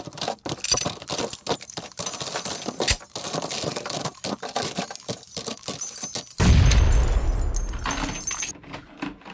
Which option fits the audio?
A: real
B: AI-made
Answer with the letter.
A